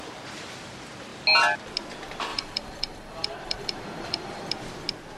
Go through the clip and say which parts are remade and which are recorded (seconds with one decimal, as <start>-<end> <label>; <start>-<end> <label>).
0.0-2.3 recorded; 2.3-4.5 remade; 4.5-5.2 recorded